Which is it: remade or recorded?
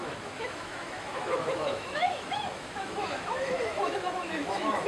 remade